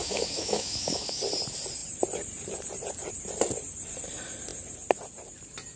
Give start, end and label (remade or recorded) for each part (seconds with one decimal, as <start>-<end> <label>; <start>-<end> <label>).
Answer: 0.0-1.2 remade; 1.2-5.8 recorded